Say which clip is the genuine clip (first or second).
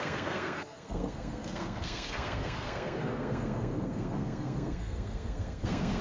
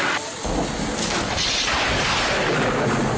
second